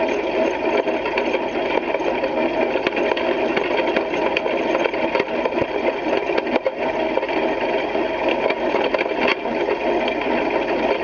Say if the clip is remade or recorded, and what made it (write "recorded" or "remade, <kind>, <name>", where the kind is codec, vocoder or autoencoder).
recorded